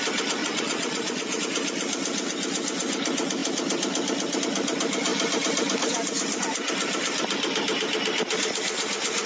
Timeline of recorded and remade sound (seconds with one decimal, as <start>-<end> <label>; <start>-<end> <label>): 0.0-0.4 recorded; 0.4-1.4 remade; 1.4-9.3 recorded